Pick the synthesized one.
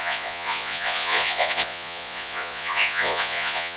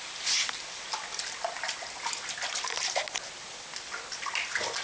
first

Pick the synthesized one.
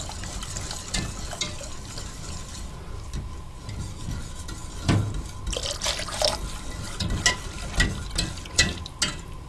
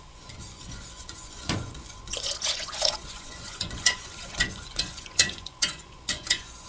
second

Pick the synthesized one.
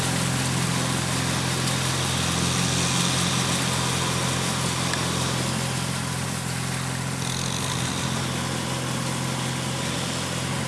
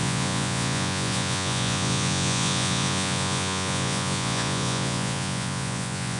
second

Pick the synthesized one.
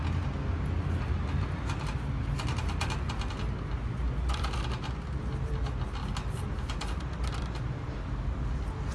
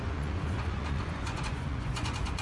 second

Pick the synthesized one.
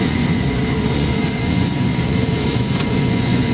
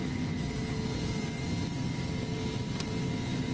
first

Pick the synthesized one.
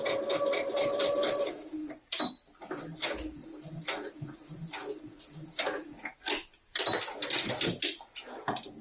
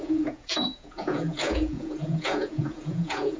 second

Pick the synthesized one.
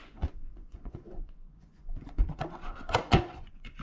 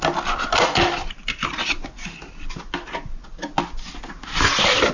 first